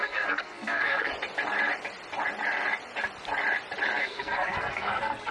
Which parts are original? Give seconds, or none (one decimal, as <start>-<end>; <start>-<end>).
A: 1.1-4.0